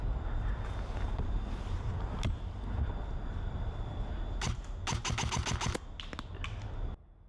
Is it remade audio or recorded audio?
recorded